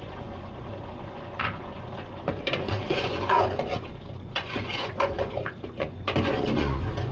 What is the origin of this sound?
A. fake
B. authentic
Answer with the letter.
A